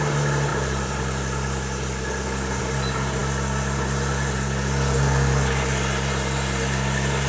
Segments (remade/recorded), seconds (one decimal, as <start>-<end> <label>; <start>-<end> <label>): 0.0-0.5 recorded; 0.5-2.6 remade; 2.6-7.3 recorded